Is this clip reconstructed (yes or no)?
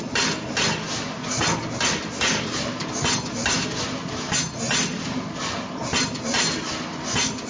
no